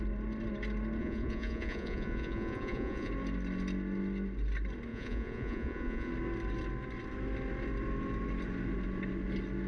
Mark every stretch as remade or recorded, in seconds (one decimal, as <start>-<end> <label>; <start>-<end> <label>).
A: 0.0-1.0 recorded; 1.0-3.1 remade; 3.1-4.9 recorded; 4.9-6.1 remade; 6.1-9.7 recorded